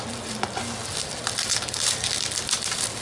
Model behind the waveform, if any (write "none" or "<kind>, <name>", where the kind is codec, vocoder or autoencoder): none